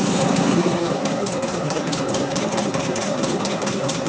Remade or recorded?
remade